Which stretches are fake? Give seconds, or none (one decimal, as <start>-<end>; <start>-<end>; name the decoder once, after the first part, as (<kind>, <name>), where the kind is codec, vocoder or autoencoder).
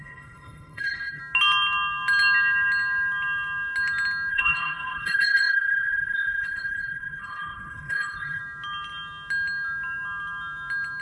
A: 0.0-1.2 (codec, HILCodec); 4.3-8.4